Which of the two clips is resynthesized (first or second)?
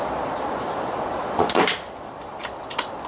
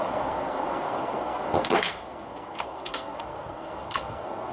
second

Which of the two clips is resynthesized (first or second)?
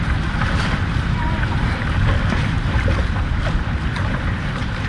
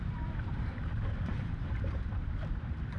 second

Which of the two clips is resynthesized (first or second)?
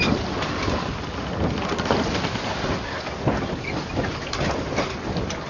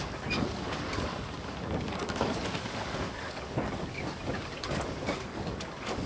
second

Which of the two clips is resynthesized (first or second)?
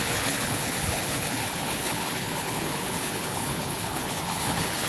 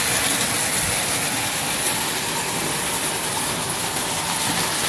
first